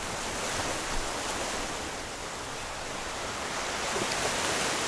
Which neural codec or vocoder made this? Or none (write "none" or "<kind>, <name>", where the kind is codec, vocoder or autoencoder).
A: none